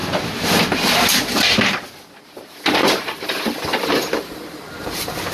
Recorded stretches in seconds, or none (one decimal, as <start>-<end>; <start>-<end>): 0.9-2.8